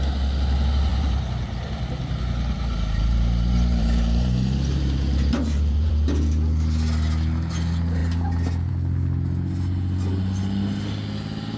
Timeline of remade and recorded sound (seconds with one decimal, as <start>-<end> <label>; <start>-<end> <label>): 0.0-0.9 recorded; 0.9-5.9 remade; 5.9-11.6 recorded